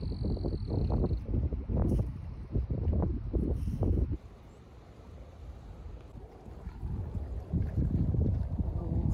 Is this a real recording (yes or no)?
yes